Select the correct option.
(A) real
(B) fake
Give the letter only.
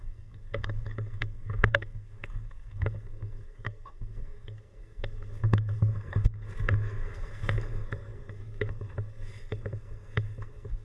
B